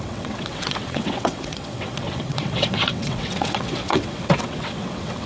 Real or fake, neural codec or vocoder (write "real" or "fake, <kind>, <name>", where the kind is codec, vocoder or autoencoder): fake, vocoder, WaveNeXt